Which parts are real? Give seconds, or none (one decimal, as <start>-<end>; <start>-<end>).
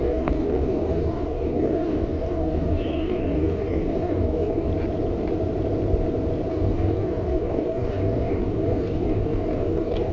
4.7-6.5